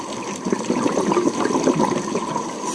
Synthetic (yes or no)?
no